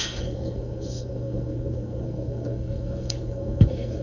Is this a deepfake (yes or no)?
yes